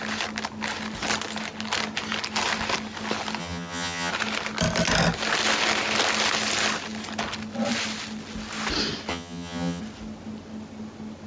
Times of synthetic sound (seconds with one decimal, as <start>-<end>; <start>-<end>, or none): 3.4-4.1; 9.1-9.8